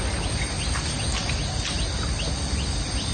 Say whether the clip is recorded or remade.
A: recorded